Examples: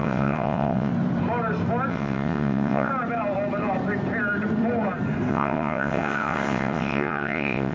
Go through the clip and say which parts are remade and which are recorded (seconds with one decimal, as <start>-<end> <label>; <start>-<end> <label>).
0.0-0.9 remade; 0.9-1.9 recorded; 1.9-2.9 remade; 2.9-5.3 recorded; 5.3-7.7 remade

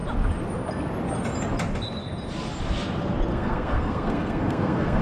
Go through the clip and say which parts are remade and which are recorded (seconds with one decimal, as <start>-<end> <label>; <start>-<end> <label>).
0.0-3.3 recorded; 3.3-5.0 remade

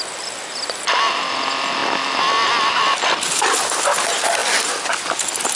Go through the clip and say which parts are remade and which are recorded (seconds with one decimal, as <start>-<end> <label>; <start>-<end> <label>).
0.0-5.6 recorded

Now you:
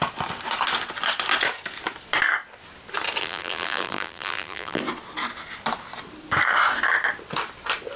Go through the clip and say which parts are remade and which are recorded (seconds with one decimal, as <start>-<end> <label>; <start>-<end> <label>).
0.0-3.2 recorded; 3.2-4.8 remade; 4.8-8.0 recorded